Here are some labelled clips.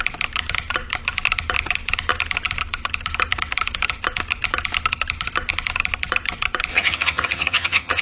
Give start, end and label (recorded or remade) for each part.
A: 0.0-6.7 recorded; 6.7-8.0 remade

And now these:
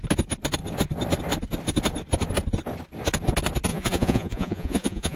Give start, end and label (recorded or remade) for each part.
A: 0.0-3.7 recorded; 3.7-5.2 remade

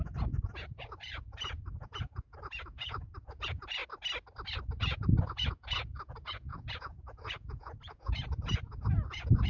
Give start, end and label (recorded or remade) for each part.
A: 0.0-3.8 remade; 3.8-4.6 recorded; 4.6-9.5 remade

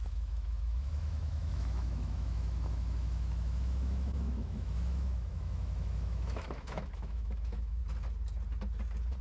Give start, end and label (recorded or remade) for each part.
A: 0.0-7.8 remade; 7.8-9.2 recorded

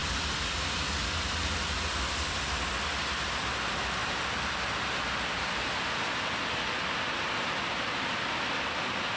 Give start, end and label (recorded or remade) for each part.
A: 0.0-9.2 recorded